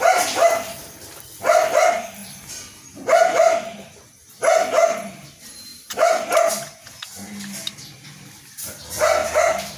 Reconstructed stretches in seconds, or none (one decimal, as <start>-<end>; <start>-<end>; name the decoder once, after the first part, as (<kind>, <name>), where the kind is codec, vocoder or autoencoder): 9.2-9.8 (vocoder, BigVGAN v2)